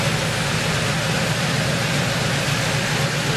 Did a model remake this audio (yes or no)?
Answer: no